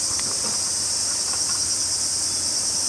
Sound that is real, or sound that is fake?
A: real